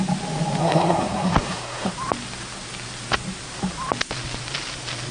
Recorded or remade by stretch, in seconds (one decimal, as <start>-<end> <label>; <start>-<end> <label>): 0.0-0.6 recorded; 0.6-1.9 remade; 1.9-5.1 recorded